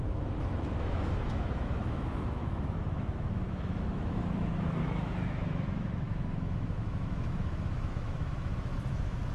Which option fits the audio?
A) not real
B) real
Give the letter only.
A